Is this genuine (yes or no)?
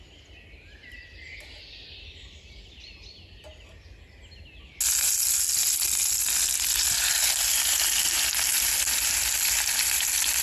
yes